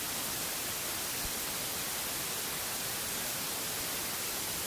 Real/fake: real